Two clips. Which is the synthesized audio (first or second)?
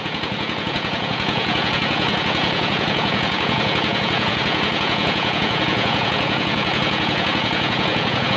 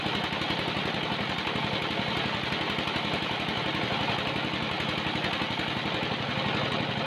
first